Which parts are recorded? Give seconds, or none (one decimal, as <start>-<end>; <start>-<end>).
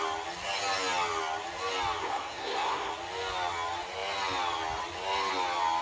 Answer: 0.0-2.0; 2.9-5.8